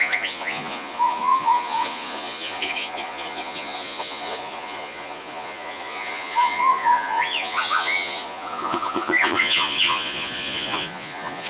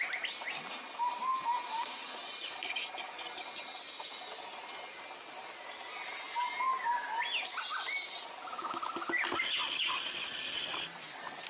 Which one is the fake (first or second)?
first